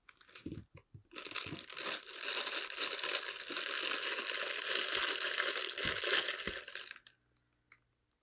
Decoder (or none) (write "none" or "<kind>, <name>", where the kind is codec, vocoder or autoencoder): none